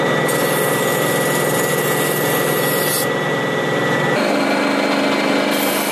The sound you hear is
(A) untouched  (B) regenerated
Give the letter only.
A